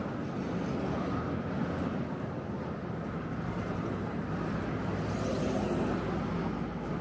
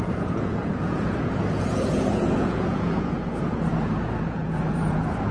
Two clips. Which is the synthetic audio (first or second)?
second